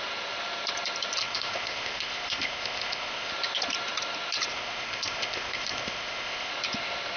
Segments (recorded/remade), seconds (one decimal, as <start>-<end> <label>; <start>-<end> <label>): 0.0-1.2 recorded; 1.2-3.3 remade; 3.3-4.5 recorded; 4.5-6.5 remade; 6.5-7.2 recorded